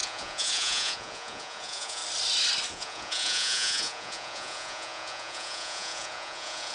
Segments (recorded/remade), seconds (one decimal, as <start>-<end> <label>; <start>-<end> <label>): 0.0-2.0 remade; 2.0-2.7 recorded; 2.7-6.7 remade

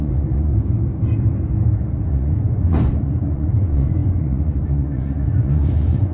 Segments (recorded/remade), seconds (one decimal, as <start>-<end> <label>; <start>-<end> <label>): 0.0-0.5 remade; 0.5-2.1 recorded; 2.1-6.1 remade